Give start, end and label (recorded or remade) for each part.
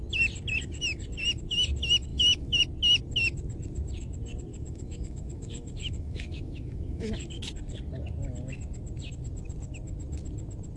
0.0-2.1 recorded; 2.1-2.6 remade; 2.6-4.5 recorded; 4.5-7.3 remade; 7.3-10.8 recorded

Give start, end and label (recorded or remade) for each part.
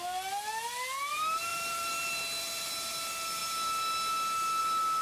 0.0-1.5 recorded; 1.5-2.2 remade; 2.2-5.0 recorded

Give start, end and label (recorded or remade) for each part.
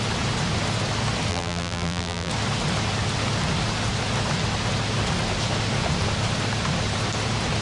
0.0-1.3 recorded; 1.3-2.3 remade; 2.3-7.6 recorded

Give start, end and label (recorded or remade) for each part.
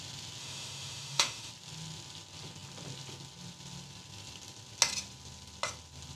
0.0-0.4 recorded; 0.4-1.5 remade; 1.5-6.2 recorded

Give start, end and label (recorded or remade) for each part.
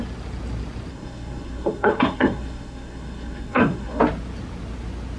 0.0-0.9 recorded; 0.9-4.0 remade; 4.0-5.2 recorded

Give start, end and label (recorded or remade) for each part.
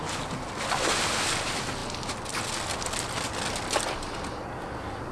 0.0-5.1 recorded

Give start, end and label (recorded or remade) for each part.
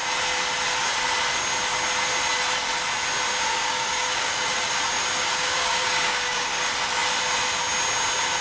0.0-3.5 recorded; 3.5-4.7 remade; 4.7-5.2 recorded; 5.2-6.6 remade; 6.6-8.4 recorded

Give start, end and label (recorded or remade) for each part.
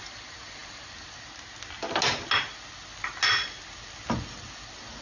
0.0-5.0 recorded